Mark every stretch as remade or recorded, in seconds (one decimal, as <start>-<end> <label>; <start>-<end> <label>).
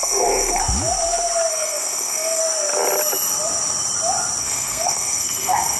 0.0-0.6 remade; 0.6-1.5 recorded; 1.5-2.4 remade; 2.4-4.4 recorded; 4.4-5.8 remade